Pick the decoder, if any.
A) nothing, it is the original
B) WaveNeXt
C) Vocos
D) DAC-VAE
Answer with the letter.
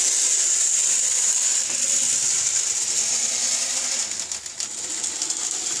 A